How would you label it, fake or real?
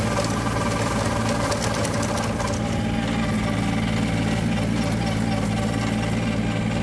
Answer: real